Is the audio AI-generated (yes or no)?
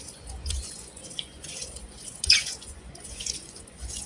yes